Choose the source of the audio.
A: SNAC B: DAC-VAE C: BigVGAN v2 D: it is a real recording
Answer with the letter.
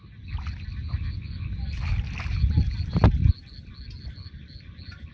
D